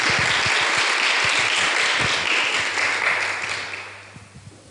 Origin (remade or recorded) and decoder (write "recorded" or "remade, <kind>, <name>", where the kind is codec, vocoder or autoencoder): recorded